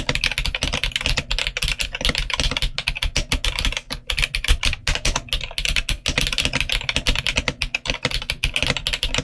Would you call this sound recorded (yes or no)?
yes